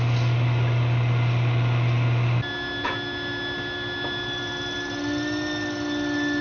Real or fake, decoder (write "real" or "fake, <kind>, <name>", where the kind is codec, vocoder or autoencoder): real